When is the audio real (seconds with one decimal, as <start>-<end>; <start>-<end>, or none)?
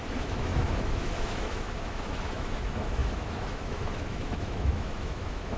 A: none